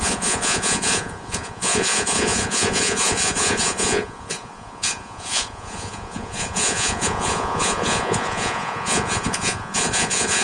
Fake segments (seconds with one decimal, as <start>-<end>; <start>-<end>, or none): 0.0-10.4